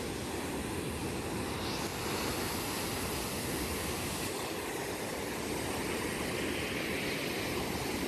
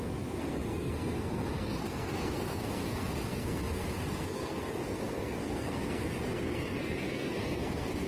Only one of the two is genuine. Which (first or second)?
first